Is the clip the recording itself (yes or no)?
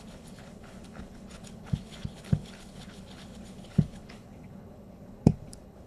no